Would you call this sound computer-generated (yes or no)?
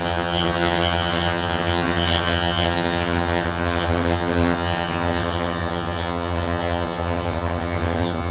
yes